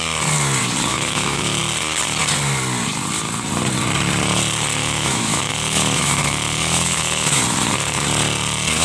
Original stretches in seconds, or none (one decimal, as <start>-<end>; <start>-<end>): 0.0-0.9; 1.6-4.8; 7.4-8.8